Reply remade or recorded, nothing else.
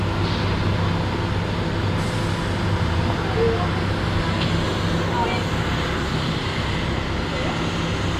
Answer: recorded